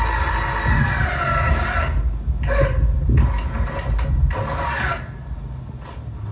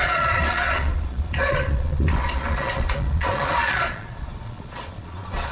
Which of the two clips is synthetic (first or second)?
second